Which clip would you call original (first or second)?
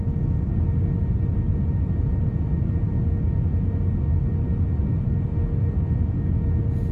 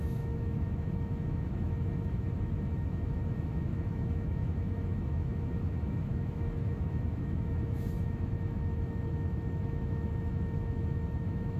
first